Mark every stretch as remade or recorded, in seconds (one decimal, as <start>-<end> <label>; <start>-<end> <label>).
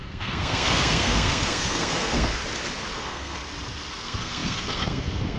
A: 0.0-2.4 remade; 2.4-2.9 recorded; 2.9-3.4 remade; 3.4-3.9 recorded; 3.9-5.4 remade